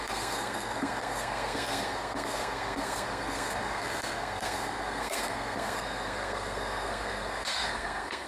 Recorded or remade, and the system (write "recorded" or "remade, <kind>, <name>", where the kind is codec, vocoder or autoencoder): remade, codec, SNAC